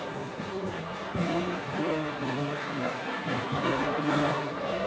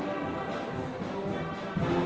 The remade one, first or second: first